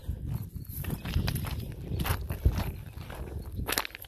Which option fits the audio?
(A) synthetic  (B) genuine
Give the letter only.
B